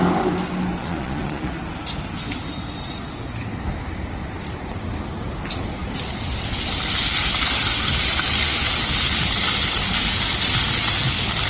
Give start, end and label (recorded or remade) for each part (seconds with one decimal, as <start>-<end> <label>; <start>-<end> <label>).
0.0-0.8 recorded; 0.8-1.5 remade; 1.5-11.5 recorded